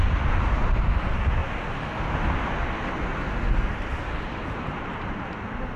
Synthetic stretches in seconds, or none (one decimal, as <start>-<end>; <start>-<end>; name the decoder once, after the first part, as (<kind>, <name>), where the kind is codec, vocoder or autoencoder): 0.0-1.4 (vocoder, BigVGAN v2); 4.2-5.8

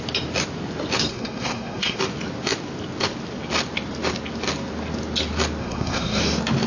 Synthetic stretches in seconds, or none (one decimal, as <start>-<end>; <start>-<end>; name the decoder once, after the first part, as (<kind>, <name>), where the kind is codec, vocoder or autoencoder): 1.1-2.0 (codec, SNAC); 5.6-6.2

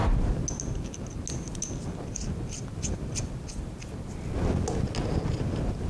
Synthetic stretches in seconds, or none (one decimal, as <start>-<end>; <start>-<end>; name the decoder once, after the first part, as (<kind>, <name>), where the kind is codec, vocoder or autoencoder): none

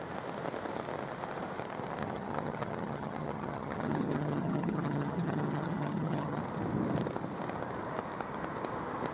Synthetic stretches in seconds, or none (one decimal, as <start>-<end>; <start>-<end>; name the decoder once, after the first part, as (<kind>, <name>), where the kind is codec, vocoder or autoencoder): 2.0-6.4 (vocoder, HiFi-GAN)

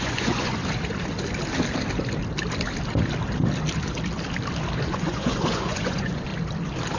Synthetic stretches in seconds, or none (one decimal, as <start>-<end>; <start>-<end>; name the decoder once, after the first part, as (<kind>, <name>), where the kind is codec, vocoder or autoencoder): 0.0-0.6 (vocoder, Vocos); 4.8-6.3

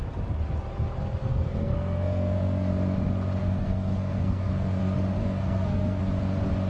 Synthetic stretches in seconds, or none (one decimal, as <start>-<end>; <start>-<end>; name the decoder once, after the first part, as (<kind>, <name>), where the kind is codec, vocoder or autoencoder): 1.2-2.7 (codec, SNAC); 3.4-4.8; 5.2-6.0

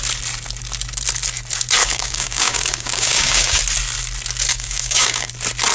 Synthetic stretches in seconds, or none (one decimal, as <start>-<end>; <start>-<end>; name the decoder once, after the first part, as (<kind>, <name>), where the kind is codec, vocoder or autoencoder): 1.8-3.6 (codec, DAC); 4.5-5.3